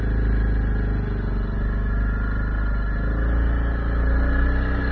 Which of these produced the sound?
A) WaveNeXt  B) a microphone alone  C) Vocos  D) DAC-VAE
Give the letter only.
B